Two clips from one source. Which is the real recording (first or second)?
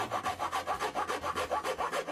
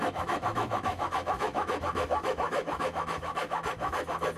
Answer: first